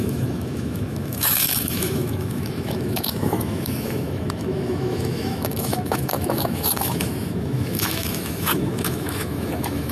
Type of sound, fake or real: fake